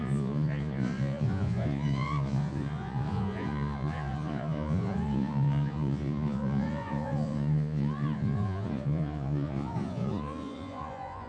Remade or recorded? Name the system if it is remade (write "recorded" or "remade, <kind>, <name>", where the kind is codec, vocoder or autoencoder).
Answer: remade, vocoder, Vocos